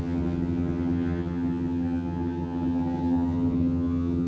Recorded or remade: remade